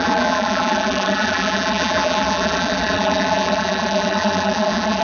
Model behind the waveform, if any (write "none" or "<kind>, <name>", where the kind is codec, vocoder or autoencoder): vocoder, BigVGAN v2